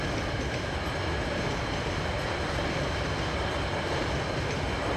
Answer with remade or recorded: recorded